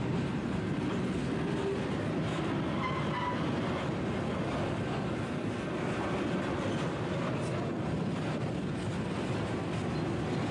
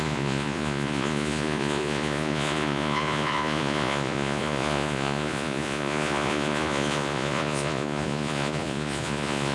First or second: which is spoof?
second